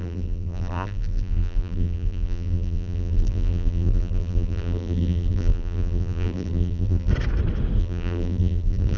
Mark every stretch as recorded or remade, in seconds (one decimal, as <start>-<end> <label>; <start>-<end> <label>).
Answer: 0.0-7.1 remade; 7.1-7.8 recorded; 7.8-9.0 remade

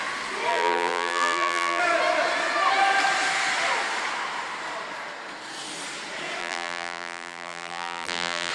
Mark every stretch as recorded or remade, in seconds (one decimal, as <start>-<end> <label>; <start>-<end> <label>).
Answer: 0.0-0.5 recorded; 0.5-1.8 remade; 1.8-6.4 recorded; 6.4-8.5 remade